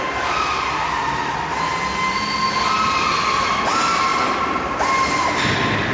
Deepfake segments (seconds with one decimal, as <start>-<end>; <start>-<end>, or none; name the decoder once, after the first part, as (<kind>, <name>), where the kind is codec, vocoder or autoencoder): none